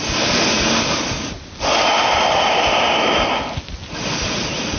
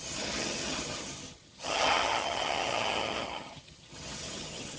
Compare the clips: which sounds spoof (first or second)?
second